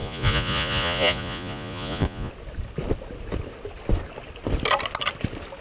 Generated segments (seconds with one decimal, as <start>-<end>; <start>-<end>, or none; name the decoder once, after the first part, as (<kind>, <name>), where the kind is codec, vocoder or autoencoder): 0.0-2.3 (vocoder, Vocos)